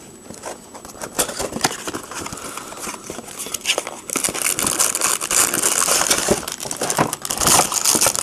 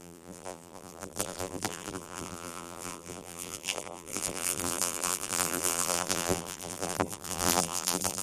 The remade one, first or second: second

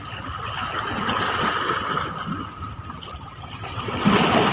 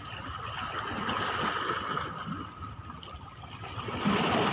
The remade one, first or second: first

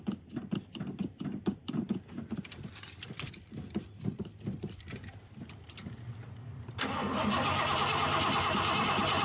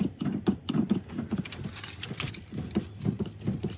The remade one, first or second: first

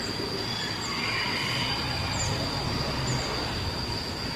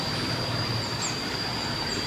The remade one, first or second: second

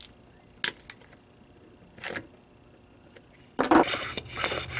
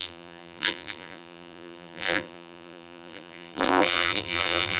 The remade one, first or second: second